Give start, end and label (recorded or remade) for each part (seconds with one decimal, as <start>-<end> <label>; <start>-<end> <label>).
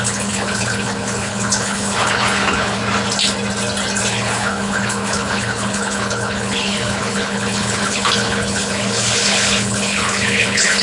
0.0-2.8 remade; 2.8-4.1 recorded; 4.1-10.8 remade